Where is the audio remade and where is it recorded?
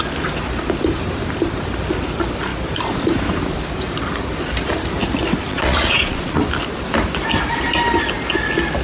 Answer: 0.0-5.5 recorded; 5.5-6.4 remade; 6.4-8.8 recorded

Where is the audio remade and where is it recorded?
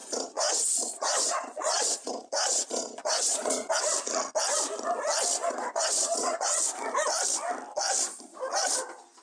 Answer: 0.0-3.7 remade; 3.7-5.4 recorded; 5.4-6.6 remade; 6.6-9.2 recorded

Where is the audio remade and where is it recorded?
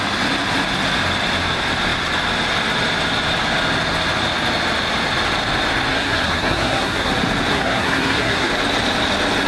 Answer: 0.0-5.9 recorded; 5.9-7.1 remade; 7.1-7.5 recorded; 7.5-8.5 remade; 8.5-9.5 recorded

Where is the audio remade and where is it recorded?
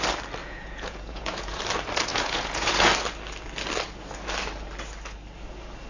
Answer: 0.0-0.4 recorded; 0.4-1.6 remade; 1.6-2.1 recorded; 2.1-2.9 remade; 2.9-5.9 recorded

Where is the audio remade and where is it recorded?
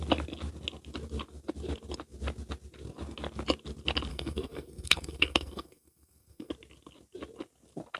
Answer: 0.0-4.1 recorded; 4.1-6.5 remade; 6.5-8.0 recorded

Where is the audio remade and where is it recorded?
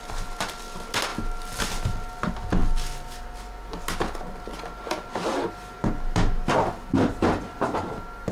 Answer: 0.0-8.3 recorded